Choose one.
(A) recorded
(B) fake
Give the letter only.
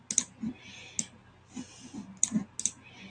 A